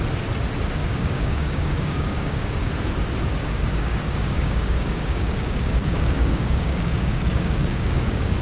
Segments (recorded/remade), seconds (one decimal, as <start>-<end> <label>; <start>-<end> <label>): 0.0-0.8 recorded; 0.8-2.7 remade; 2.7-3.4 recorded; 3.4-8.4 remade